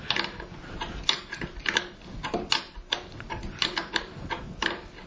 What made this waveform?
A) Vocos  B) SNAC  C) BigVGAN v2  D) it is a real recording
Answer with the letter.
D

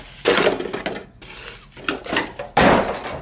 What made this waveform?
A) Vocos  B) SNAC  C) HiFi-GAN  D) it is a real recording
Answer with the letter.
D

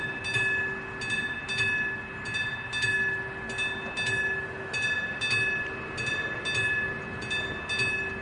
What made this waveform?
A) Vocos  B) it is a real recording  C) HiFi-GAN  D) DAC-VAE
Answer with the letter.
B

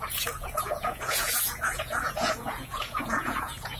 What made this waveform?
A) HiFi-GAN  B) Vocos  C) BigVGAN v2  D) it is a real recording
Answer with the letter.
B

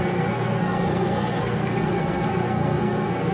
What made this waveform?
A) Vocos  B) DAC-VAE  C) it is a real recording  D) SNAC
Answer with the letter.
D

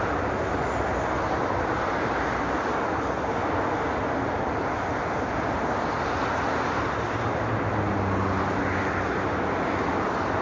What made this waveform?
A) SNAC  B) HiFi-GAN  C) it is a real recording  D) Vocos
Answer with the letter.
C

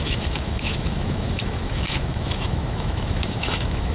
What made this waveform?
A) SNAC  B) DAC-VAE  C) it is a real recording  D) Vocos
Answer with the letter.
B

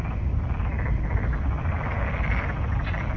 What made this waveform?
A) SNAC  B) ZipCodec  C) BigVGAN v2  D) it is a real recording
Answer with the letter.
D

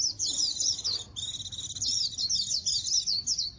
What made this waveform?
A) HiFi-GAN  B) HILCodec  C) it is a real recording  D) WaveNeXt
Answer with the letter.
C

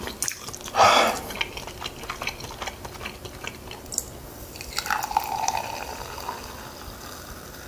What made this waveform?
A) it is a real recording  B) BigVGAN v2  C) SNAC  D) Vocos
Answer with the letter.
A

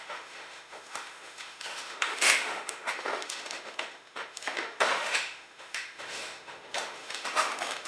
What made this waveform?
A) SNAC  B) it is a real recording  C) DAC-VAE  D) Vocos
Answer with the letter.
C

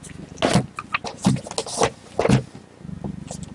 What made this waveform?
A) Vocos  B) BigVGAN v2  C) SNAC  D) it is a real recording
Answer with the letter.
D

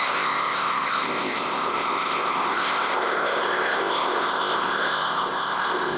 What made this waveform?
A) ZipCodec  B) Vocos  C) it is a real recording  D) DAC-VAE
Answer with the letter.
A